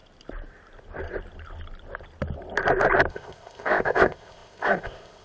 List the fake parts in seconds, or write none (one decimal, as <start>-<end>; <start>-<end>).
3.1-5.2

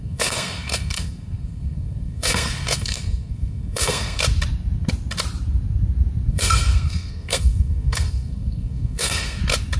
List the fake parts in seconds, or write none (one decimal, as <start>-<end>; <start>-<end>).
0.0-4.2; 6.3-9.4